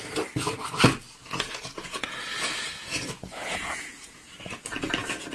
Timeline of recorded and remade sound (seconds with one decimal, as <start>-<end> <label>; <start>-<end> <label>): 0.0-1.2 recorded; 1.2-4.4 remade; 4.4-5.3 recorded